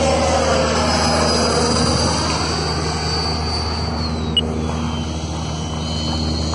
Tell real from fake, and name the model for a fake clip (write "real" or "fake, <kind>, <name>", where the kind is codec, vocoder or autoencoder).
real